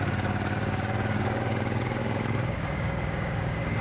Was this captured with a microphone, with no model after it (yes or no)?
no